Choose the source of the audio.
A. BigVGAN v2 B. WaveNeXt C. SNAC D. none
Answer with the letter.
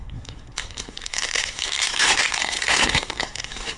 C